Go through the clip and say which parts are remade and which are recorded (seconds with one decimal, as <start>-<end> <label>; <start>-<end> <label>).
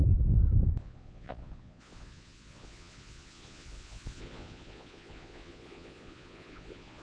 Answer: 0.0-0.8 recorded; 0.8-7.0 remade